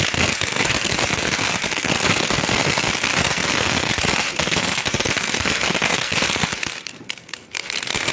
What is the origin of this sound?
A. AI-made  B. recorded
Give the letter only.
A